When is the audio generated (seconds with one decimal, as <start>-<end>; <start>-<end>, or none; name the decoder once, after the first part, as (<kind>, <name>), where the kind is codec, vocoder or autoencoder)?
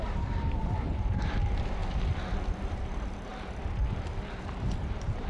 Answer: 0.0-1.8 (vocoder, BigVGAN v2); 2.7-3.3; 4.8-5.3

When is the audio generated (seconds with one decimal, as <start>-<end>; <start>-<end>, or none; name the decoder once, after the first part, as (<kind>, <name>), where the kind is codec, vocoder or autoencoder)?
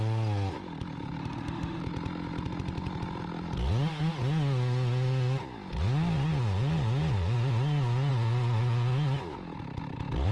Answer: 1.2-1.8 (autoencoder, DAC-VAE)